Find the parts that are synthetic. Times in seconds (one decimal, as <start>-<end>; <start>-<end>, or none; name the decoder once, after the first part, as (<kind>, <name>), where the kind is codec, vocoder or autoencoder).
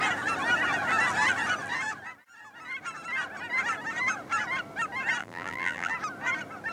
5.2-5.9 (vocoder, BigVGAN v2)